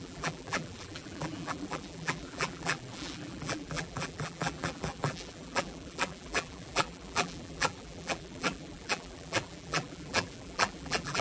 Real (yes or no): no